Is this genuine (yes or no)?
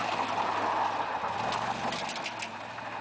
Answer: yes